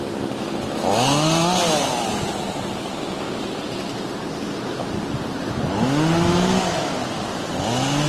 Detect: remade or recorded recorded